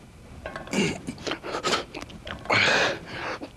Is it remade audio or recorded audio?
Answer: recorded